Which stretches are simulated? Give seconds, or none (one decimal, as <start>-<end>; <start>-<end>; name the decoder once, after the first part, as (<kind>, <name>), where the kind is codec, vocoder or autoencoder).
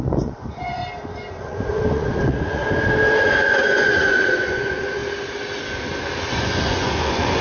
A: 0.0-0.8 (vocoder, Vocos); 1.4-2.6; 3.2-5.0; 6.3-7.4